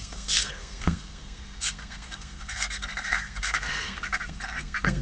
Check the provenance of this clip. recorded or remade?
remade